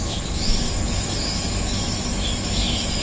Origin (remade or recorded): remade